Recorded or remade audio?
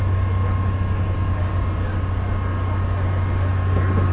recorded